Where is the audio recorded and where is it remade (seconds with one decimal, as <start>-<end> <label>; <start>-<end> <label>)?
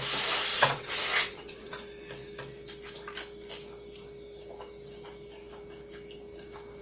0.0-0.5 recorded; 0.5-1.7 remade; 1.7-6.8 recorded